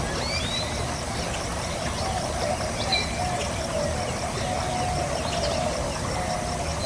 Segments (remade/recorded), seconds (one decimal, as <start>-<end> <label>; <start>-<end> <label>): 0.0-6.9 recorded